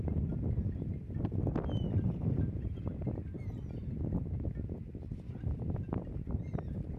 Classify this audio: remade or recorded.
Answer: recorded